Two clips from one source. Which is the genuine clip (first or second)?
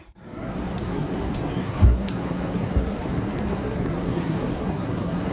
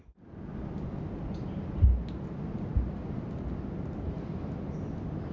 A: second